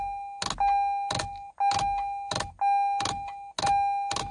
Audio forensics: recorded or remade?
recorded